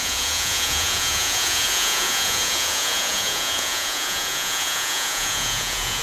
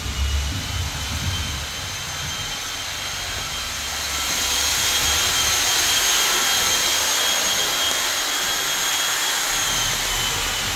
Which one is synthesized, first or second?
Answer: first